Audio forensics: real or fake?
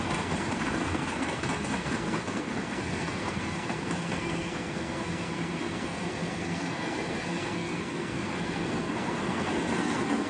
fake